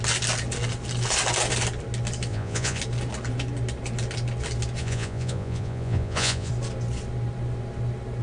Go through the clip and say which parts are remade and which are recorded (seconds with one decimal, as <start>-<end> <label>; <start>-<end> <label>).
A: 0.0-2.3 recorded; 2.3-2.8 remade; 2.8-4.8 recorded; 4.8-6.5 remade; 6.5-8.2 recorded